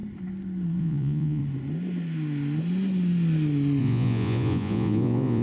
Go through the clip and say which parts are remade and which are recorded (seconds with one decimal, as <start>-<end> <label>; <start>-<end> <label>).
0.0-0.8 recorded; 0.8-1.4 remade; 1.4-3.8 recorded; 3.8-5.4 remade